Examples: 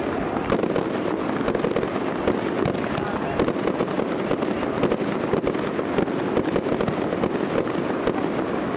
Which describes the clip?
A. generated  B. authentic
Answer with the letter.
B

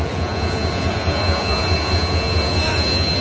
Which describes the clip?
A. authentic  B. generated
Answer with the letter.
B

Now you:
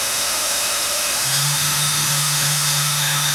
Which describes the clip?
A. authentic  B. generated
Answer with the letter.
B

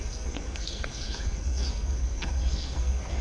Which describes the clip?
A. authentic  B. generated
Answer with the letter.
B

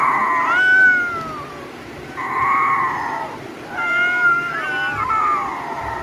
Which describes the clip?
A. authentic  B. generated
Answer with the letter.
A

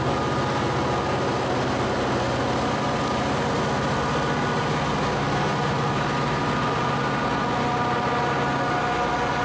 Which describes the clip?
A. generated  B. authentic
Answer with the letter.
B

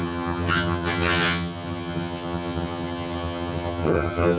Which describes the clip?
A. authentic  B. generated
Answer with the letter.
B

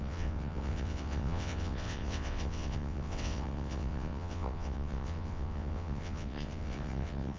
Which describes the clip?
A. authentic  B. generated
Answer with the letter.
B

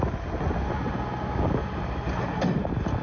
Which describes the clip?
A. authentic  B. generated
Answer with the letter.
A